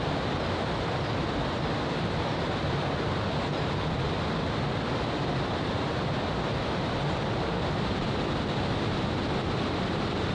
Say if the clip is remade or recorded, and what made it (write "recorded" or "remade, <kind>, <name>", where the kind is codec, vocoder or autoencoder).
recorded